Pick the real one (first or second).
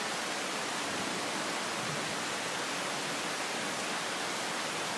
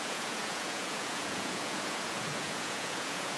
first